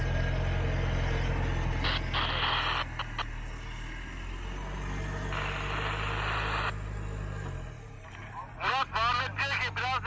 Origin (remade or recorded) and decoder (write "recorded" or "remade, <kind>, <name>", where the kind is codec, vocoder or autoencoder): recorded